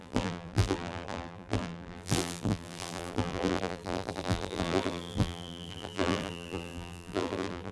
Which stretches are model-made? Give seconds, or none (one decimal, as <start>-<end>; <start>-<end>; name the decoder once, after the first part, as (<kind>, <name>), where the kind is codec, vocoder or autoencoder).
0.0-7.7 (vocoder, BigVGAN v2)